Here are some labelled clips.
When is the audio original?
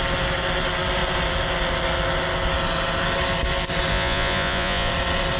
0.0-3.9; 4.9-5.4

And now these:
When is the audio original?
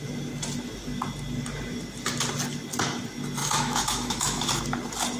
0.0-3.4; 4.4-5.2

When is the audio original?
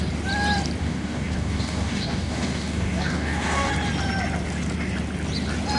0.0-0.8; 3.7-5.8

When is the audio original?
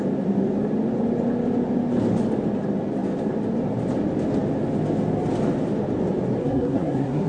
0.0-6.4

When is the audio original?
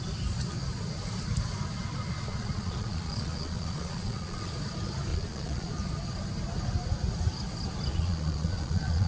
0.0-2.3; 4.5-5.1; 5.7-7.9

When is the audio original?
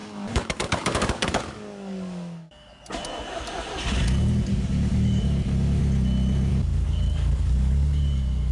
2.7-4.5; 5.8-6.5